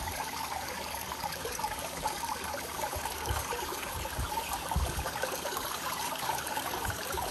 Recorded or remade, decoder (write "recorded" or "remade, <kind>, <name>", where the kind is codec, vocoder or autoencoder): remade, codec, DAC